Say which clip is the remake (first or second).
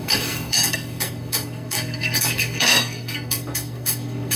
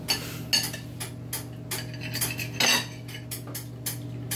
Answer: first